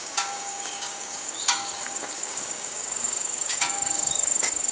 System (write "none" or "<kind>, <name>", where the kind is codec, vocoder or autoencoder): codec, DAC